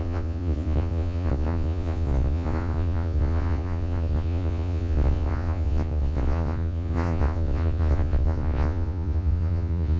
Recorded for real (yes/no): no